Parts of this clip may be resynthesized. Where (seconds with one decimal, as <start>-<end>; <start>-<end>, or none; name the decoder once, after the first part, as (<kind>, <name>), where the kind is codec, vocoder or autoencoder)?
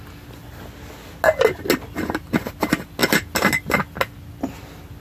none